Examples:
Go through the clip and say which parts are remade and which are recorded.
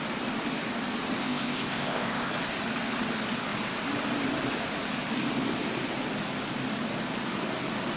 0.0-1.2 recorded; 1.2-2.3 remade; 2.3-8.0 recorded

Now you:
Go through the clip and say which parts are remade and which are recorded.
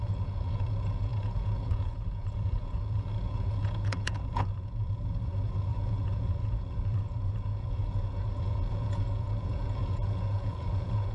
0.0-11.1 remade